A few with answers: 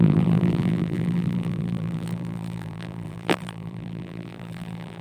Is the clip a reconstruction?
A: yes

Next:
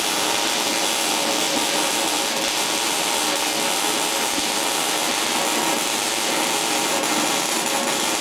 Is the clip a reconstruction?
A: no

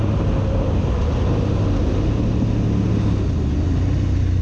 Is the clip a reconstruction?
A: no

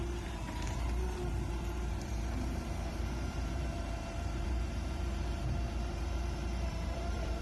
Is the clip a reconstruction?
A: yes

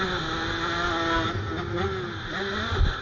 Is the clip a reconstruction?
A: no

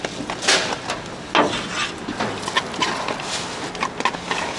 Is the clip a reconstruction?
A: no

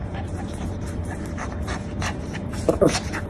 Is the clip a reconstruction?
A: yes